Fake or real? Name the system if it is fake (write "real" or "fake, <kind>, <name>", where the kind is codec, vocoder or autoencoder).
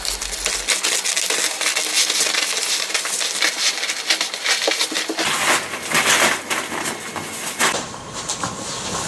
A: real